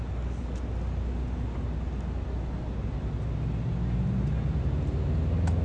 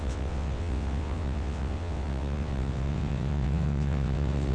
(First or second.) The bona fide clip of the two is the first